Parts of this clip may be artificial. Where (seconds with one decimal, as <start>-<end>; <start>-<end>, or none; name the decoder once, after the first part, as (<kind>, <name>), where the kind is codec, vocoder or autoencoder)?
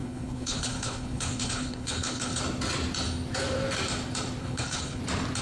0.0-2.4 (codec, HILCodec); 4.4-5.0